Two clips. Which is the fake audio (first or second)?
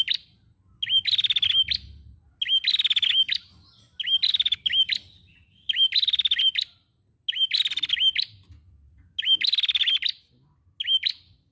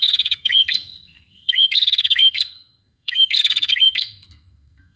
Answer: second